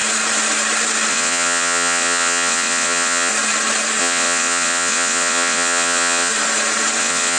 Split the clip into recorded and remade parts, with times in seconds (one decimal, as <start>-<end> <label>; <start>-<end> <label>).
0.0-1.1 recorded; 1.1-3.3 remade; 3.3-4.0 recorded; 4.0-6.3 remade; 6.3-7.0 recorded; 7.0-7.4 remade